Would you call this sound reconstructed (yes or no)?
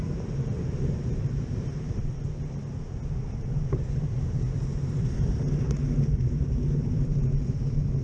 yes